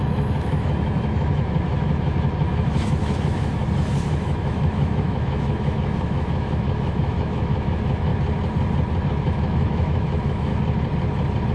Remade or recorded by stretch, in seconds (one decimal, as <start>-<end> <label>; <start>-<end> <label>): 0.0-3.6 remade; 3.6-4.2 recorded; 4.2-8.1 remade; 8.1-9.1 recorded; 9.1-10.5 remade; 10.5-11.5 recorded